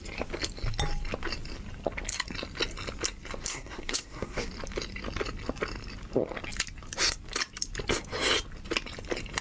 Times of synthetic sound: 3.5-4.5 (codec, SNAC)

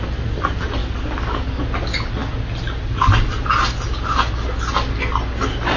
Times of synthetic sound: 0.8-1.6 (codec, DAC)

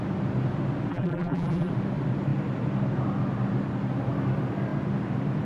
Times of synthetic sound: 0.9-1.7 (vocoder, BigVGAN v2)

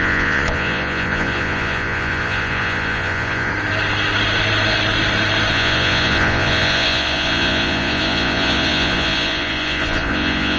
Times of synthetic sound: 0.0-3.5 (vocoder, Vocos); 5.5-10.6

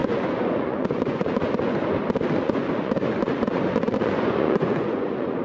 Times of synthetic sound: 0.0-1.8 (vocoder, Vocos); 2.3-5.4

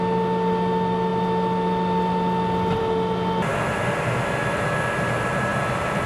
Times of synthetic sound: none

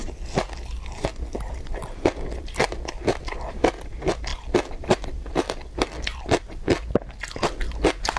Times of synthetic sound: 1.6-4.3 (vocoder, BigVGAN v2); 4.8-6.1